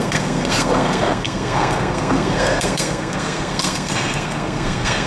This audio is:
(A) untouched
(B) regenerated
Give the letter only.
B